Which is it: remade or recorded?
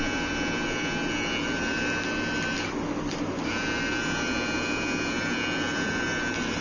recorded